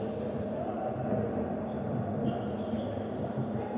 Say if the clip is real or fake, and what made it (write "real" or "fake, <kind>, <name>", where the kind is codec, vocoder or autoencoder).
real